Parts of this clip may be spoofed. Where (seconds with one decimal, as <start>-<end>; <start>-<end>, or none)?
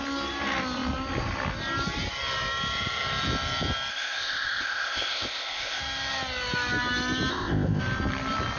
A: 3.9-5.8; 7.3-7.8